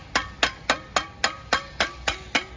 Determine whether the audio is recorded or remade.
recorded